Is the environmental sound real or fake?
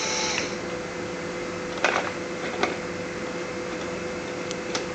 real